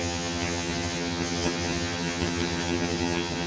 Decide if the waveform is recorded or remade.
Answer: remade